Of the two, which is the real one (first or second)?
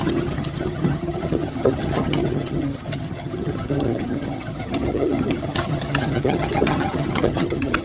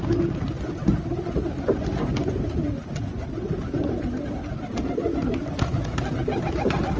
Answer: second